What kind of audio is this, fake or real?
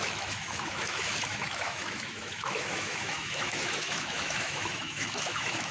fake